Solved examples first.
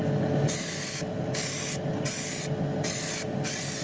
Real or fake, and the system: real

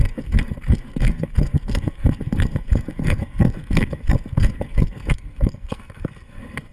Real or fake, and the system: fake, codec, SNAC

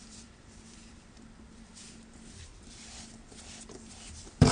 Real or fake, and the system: fake, vocoder, BigVGAN v2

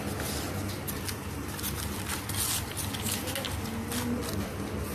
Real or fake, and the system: real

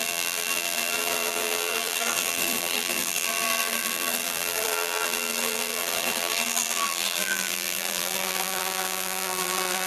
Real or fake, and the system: fake, vocoder, BigVGAN v2